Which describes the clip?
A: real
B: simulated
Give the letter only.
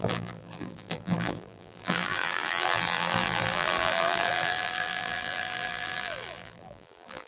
B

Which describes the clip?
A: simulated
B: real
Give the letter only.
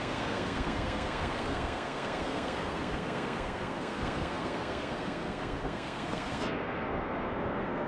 A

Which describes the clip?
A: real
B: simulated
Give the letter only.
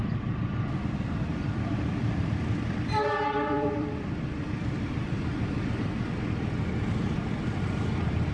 B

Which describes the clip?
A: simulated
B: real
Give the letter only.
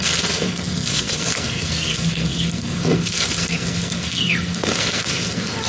A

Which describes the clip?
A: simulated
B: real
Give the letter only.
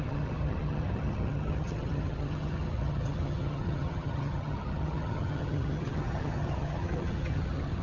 A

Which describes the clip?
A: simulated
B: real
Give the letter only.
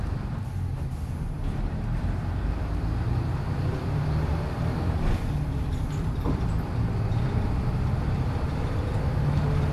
A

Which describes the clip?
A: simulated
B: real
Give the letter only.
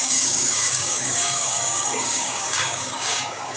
A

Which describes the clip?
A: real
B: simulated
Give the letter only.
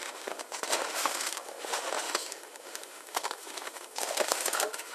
B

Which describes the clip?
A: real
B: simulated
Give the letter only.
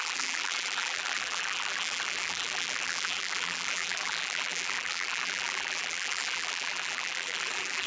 B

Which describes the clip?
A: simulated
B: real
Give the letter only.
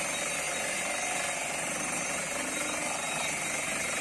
B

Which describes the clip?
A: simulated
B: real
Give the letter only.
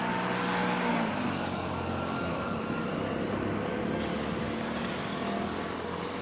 A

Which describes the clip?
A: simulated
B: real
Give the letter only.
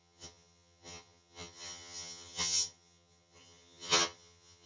A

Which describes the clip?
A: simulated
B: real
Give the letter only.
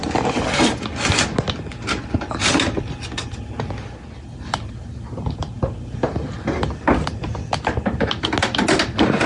B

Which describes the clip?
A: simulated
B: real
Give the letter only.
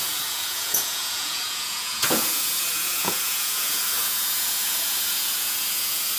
A